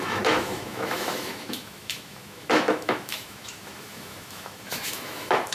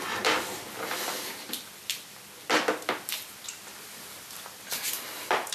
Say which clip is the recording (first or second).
second